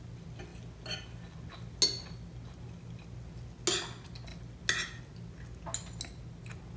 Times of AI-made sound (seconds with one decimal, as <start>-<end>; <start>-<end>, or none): none